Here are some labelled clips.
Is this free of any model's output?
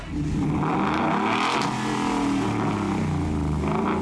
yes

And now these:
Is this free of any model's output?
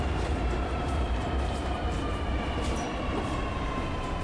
no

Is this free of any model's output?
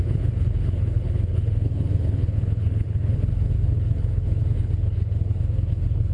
no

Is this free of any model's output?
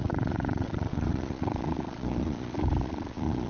no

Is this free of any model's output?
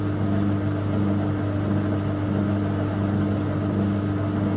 yes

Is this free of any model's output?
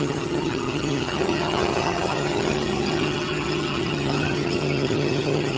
no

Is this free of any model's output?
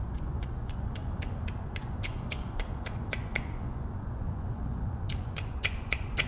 no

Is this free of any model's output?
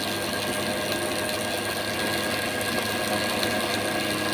yes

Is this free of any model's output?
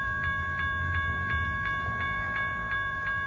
no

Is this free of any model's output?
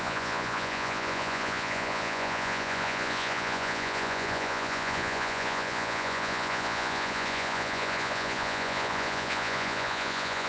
no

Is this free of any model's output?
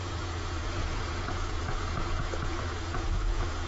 no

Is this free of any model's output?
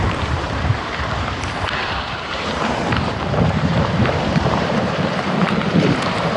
no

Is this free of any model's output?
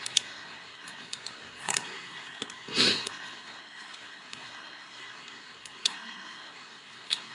no